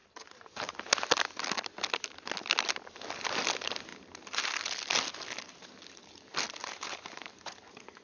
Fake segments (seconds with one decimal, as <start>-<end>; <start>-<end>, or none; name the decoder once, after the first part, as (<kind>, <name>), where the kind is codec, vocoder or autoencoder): 0.0-0.7 (vocoder, BigVGAN v2); 3.9-4.5; 6.6-7.3